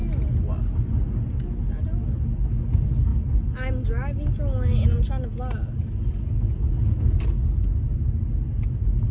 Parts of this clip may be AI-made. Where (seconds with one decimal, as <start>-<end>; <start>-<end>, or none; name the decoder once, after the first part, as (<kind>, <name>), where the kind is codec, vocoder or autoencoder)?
none